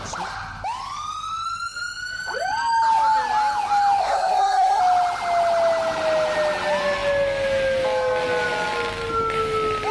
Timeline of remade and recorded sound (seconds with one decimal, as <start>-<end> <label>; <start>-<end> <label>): 0.0-4.0 recorded; 4.0-4.8 remade; 4.8-9.9 recorded